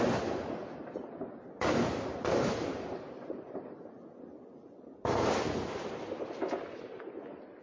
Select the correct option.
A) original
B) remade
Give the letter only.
A